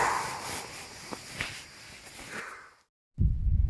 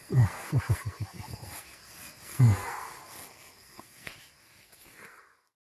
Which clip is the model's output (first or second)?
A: second